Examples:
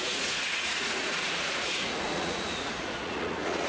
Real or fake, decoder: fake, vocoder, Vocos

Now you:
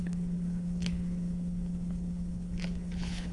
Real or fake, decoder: fake, codec, HILCodec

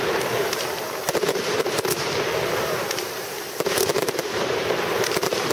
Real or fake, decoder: fake, vocoder, BigVGAN v2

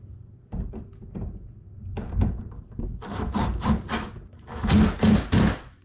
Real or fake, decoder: real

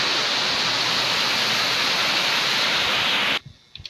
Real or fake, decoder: real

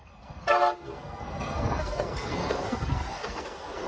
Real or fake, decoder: fake, codec, SNAC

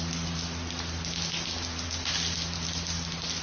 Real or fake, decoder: fake, vocoder, BigVGAN v2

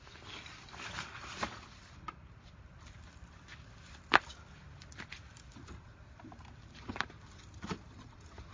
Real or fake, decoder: fake, vocoder, BigVGAN v2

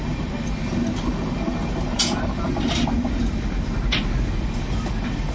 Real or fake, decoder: real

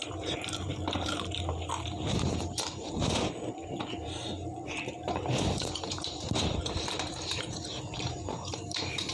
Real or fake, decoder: fake, vocoder, BigVGAN v2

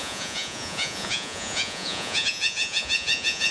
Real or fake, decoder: fake, vocoder, Vocos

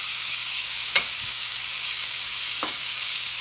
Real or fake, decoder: fake, codec, DAC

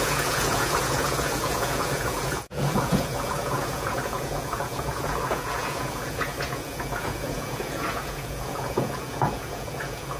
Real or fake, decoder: fake, vocoder, Vocos